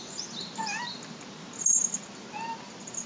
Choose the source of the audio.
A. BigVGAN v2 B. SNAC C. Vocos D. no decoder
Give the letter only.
D